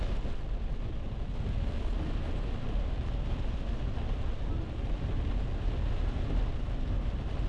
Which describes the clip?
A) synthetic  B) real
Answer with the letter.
B